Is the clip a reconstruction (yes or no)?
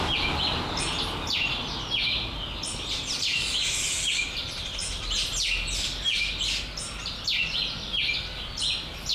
no